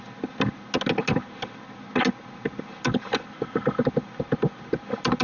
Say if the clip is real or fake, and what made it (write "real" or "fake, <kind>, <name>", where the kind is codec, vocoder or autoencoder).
real